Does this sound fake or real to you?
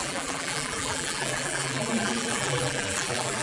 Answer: fake